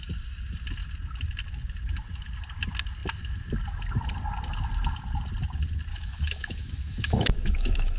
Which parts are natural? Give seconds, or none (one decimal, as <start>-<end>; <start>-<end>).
0.0-5.9